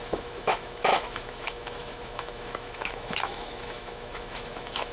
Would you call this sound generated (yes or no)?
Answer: yes